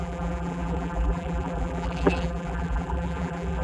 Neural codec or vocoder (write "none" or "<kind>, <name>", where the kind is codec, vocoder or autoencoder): vocoder, BigVGAN v2